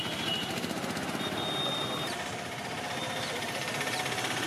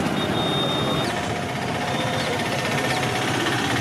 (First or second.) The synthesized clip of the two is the first